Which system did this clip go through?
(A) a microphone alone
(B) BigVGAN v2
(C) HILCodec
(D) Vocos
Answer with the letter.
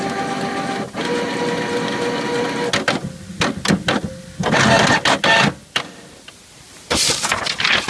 A